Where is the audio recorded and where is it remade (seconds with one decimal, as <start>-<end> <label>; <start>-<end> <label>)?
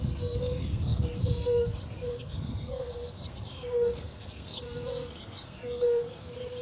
0.0-6.6 remade